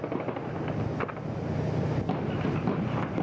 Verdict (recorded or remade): recorded